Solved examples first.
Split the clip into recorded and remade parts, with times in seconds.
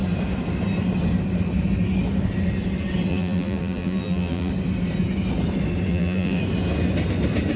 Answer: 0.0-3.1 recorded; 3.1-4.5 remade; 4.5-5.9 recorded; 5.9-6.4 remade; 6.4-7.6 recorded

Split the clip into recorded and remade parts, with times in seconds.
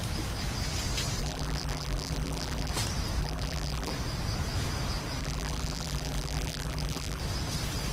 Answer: 0.0-1.2 recorded; 1.2-2.7 remade; 2.7-3.2 recorded; 3.2-3.9 remade; 3.9-5.2 recorded; 5.2-7.2 remade; 7.2-7.9 recorded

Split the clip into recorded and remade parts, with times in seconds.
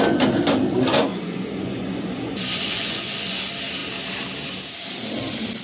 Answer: 0.0-1.1 recorded; 1.1-3.4 remade; 3.4-5.6 recorded